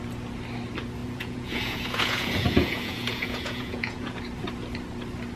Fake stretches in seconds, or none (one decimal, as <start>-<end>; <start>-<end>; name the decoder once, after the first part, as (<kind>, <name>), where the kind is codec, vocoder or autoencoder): 1.0-4.2 (vocoder, Vocos)